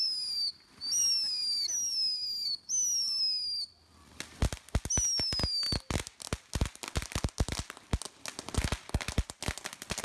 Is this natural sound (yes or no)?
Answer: yes